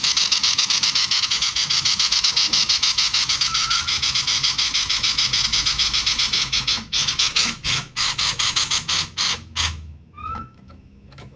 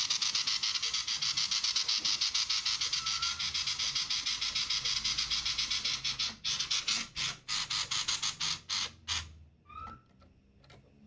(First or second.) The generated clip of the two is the first